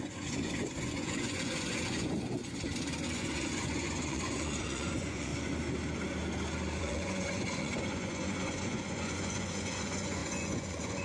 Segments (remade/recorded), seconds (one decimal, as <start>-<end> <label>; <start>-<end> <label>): 0.0-2.4 remade; 2.4-3.1 recorded; 3.1-5.3 remade; 5.3-6.8 recorded; 6.8-11.0 remade